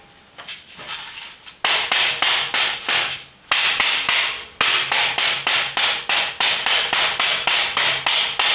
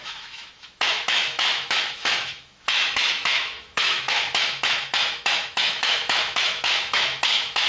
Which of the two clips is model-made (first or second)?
second